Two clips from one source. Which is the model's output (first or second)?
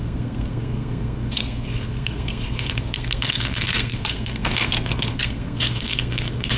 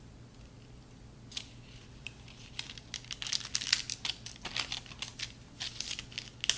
first